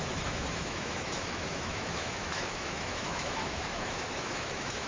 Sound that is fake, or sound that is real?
fake